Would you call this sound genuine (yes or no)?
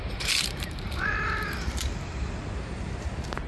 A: no